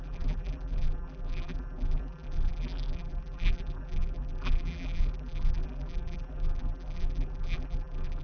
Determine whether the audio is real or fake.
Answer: fake